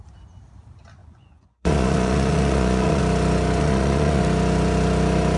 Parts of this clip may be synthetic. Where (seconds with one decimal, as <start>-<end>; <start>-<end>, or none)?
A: 1.0-3.0; 3.6-4.2